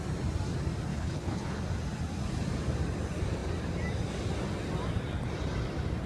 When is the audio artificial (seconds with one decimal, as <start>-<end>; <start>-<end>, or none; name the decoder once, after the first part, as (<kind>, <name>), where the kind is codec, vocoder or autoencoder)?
0.9-1.6 (codec, HILCodec)